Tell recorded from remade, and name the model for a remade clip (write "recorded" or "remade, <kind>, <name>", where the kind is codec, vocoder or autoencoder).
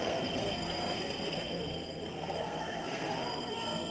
remade, codec, SNAC